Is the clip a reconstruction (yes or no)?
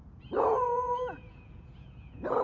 yes